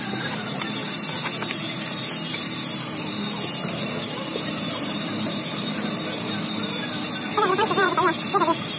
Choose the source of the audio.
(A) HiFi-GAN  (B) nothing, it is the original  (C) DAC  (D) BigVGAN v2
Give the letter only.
D